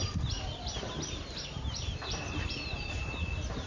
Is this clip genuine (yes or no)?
yes